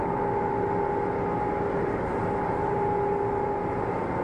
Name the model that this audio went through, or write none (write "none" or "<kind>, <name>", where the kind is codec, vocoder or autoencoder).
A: none